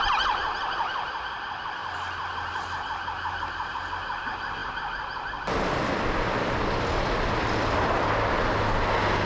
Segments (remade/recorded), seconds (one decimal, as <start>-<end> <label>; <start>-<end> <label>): 0.0-9.3 recorded